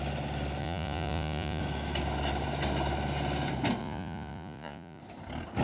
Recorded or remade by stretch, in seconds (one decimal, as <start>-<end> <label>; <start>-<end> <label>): 0.0-0.6 recorded; 0.6-1.6 remade; 1.6-3.8 recorded; 3.8-5.0 remade; 5.0-5.6 recorded